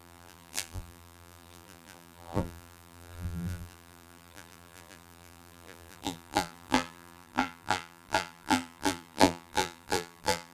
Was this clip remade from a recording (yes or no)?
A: yes